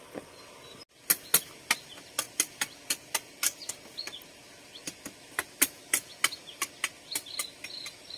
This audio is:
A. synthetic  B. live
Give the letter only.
B